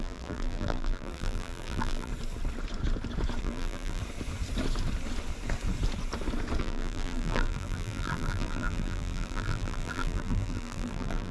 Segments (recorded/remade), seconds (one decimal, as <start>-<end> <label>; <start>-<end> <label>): 0.0-2.1 remade; 2.1-3.4 recorded; 3.4-4.0 remade; 4.0-6.6 recorded; 6.6-11.3 remade